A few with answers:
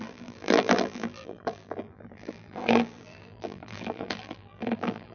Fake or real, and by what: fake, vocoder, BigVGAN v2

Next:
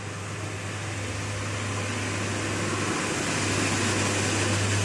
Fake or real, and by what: real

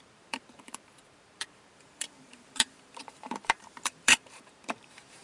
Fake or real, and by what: fake, vocoder, BigVGAN v2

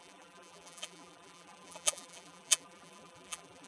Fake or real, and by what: fake, vocoder, BigVGAN v2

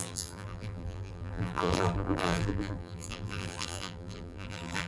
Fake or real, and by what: fake, vocoder, BigVGAN v2